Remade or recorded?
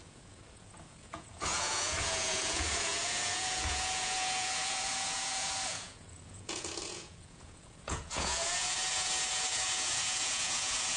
remade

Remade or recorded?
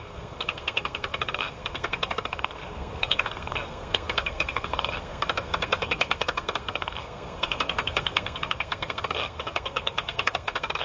remade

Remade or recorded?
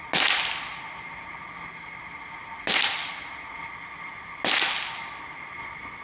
recorded